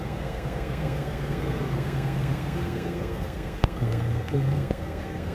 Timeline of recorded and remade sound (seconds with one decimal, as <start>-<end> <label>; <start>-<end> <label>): 0.0-5.3 remade